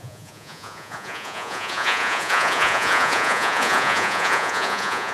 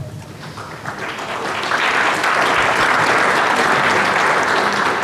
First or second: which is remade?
first